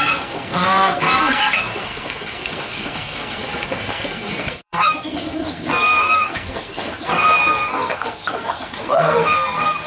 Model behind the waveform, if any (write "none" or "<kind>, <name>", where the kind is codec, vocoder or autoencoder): codec, SNAC